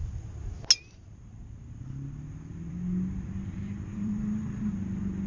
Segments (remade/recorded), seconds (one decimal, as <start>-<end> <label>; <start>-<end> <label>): 0.0-3.9 recorded; 3.9-4.7 remade; 4.7-5.3 recorded